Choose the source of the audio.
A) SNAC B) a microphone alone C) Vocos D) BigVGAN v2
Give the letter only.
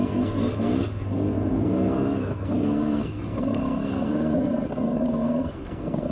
A